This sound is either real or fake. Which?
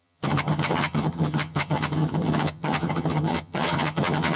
fake